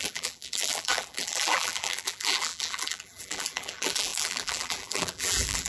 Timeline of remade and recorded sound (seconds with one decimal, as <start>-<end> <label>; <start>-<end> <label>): 0.0-5.7 remade